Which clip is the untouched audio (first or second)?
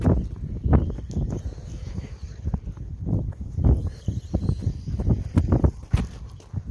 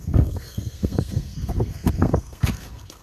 first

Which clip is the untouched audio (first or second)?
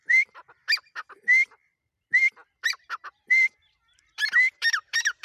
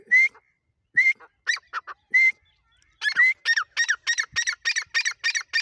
second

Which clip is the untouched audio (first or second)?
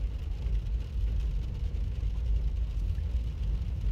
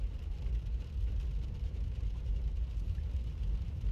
first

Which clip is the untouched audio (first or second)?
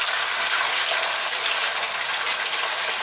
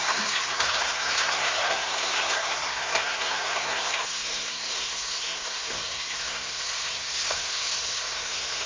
first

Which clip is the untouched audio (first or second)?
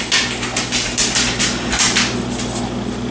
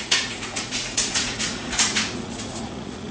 first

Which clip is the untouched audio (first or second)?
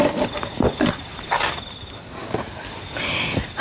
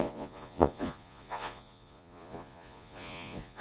first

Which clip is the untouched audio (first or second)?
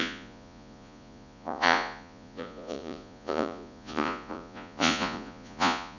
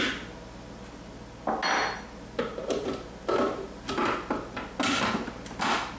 second